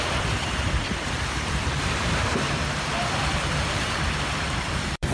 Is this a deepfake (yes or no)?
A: yes